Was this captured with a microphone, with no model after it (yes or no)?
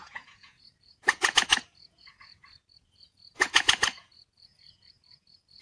no